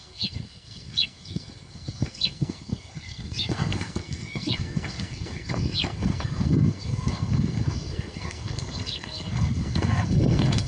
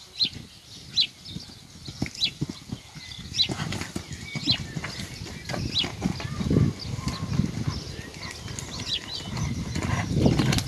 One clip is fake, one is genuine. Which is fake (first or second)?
first